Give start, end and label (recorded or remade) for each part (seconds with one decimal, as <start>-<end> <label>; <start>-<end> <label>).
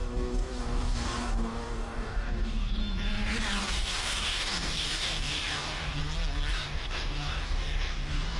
0.0-2.8 remade; 2.8-3.6 recorded; 3.6-6.0 remade; 6.0-6.5 recorded; 6.5-8.4 remade